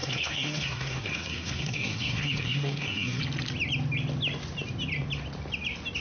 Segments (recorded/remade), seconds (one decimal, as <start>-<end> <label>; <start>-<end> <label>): 0.0-3.2 remade; 3.2-6.0 recorded